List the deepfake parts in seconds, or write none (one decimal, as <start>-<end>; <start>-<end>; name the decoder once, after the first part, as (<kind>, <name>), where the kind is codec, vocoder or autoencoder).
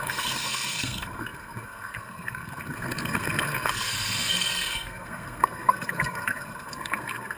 0.0-7.4 (codec, SNAC)